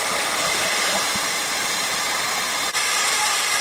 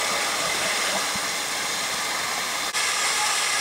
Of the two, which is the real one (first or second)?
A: second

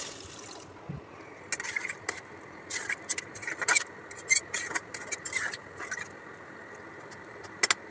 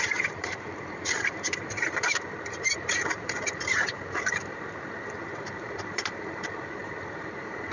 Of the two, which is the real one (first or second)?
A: first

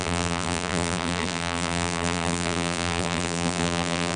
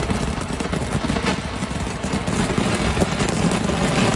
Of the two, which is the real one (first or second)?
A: second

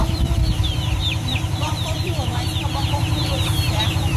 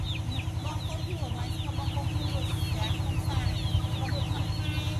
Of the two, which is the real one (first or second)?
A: second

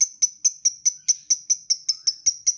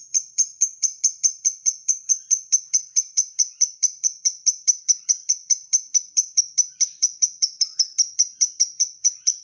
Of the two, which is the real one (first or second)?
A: first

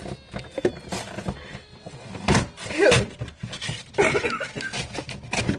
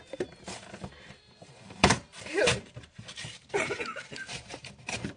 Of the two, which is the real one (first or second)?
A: first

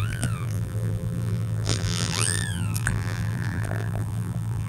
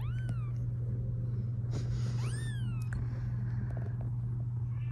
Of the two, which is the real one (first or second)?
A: second